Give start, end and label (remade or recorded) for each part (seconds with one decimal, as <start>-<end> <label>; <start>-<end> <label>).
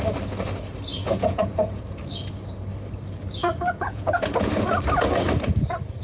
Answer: 0.0-0.9 recorded; 0.9-1.8 remade; 1.8-3.4 recorded; 3.4-4.7 remade; 4.7-6.0 recorded